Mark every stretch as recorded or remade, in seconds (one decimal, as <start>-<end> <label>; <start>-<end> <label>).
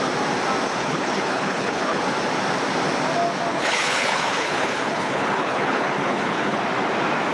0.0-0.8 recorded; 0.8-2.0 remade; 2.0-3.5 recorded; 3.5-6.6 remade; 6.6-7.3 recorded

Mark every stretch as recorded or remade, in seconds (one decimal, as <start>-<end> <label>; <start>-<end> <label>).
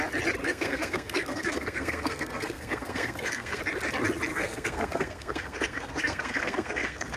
0.0-0.4 recorded; 0.4-3.6 remade; 3.6-4.3 recorded; 4.3-7.2 remade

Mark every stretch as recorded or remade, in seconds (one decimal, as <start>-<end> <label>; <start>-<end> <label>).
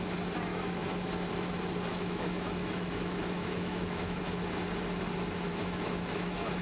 0.0-0.5 recorded; 0.5-1.1 remade; 1.1-1.9 recorded; 1.9-4.2 remade; 4.2-5.5 recorded; 5.5-6.6 remade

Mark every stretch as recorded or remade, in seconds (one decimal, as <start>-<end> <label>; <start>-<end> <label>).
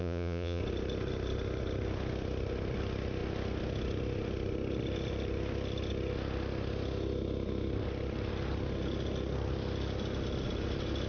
0.0-0.6 remade; 0.6-11.1 recorded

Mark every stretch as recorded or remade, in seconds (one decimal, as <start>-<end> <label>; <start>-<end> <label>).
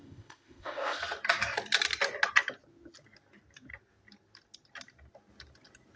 0.0-1.0 remade; 1.0-6.0 recorded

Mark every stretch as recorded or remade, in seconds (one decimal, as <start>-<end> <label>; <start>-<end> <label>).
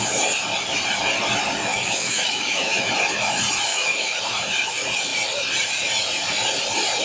0.0-1.7 recorded; 1.7-2.9 remade; 2.9-3.7 recorded; 3.7-4.2 remade; 4.2-7.0 recorded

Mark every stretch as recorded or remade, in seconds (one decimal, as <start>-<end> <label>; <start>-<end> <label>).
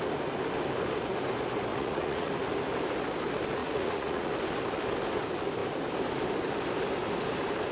0.0-1.7 recorded; 1.7-2.3 remade; 2.3-3.6 recorded; 3.6-4.3 remade; 4.3-7.7 recorded